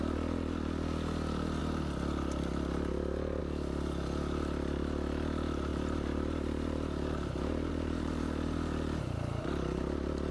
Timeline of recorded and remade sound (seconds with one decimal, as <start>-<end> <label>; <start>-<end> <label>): 0.0-5.7 recorded; 5.7-9.8 remade; 9.8-10.3 recorded